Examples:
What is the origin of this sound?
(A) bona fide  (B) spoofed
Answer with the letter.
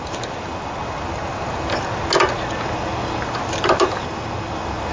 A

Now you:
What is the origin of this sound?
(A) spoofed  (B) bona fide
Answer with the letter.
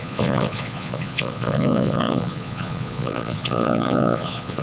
A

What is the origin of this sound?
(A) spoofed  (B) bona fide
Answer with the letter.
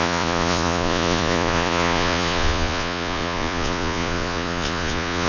A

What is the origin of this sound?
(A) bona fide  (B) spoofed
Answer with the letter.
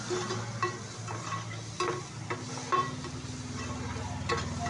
A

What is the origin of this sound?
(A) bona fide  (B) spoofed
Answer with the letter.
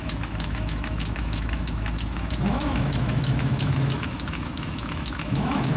B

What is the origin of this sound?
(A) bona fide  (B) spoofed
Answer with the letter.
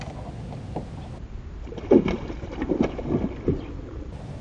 A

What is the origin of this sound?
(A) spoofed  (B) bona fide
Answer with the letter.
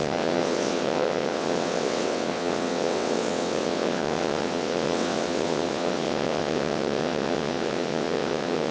A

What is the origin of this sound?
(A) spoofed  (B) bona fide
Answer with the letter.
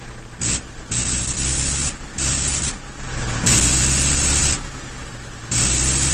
B